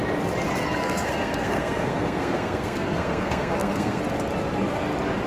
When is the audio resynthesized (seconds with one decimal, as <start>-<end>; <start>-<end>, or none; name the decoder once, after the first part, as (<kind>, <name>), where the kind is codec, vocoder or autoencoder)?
0.8-4.0 (codec, SNAC)